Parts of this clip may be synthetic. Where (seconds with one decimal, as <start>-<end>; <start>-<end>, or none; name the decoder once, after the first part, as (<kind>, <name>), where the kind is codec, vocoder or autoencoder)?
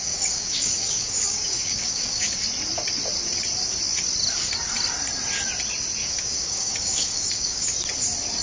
0.0-2.4 (codec, DAC); 6.0-7.7